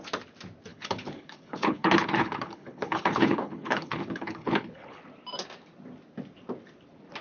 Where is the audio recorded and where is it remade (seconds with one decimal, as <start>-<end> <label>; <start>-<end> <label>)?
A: 0.0-0.7 recorded; 0.7-5.0 remade; 5.0-7.2 recorded

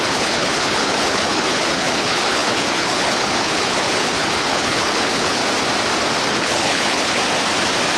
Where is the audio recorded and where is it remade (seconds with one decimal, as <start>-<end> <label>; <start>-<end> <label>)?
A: 0.0-5.4 remade; 5.4-6.3 recorded; 6.3-7.2 remade; 7.2-8.0 recorded

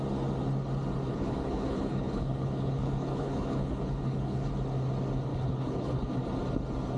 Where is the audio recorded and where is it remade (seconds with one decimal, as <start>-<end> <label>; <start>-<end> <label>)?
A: 0.0-1.1 recorded; 1.1-4.5 remade; 4.5-5.3 recorded; 5.3-6.1 remade; 6.1-7.0 recorded

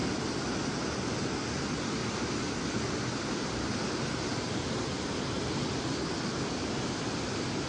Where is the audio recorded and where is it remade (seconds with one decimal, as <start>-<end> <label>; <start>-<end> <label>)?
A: 0.0-7.7 recorded

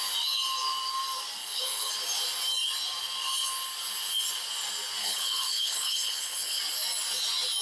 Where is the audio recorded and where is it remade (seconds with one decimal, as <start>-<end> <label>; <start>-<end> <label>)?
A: 0.0-1.4 recorded; 1.4-1.9 remade; 1.9-5.0 recorded; 5.0-6.6 remade; 6.6-7.6 recorded

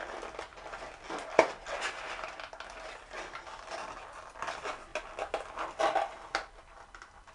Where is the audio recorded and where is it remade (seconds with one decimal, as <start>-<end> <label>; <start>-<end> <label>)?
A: 0.0-7.3 recorded

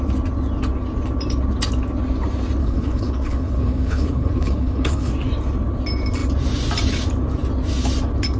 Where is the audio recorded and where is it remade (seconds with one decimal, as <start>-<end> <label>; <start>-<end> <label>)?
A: 0.0-2.6 recorded; 2.6-5.1 remade; 5.1-8.4 recorded

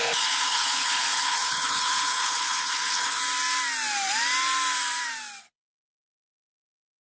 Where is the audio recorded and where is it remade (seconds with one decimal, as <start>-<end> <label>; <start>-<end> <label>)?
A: 0.0-3.2 remade; 3.2-5.4 recorded; 5.4-7.0 remade